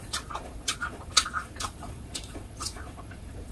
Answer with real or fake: fake